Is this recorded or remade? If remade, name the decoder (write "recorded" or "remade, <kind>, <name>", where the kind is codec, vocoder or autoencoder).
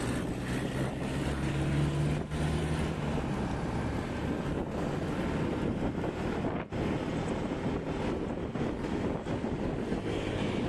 recorded